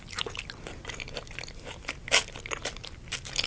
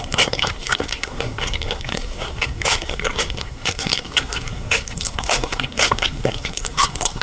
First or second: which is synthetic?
second